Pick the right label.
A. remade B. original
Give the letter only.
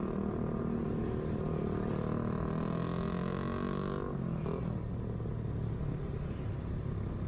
B